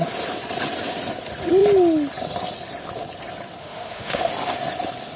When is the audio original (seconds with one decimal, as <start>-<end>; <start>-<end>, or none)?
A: 0.0-3.6; 4.3-5.2